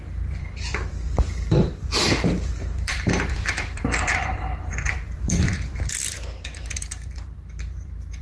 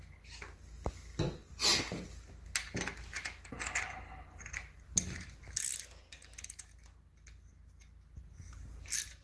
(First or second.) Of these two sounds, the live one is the second